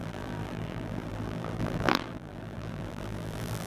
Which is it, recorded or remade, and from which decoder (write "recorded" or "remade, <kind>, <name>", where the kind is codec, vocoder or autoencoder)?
remade, vocoder, BigVGAN v2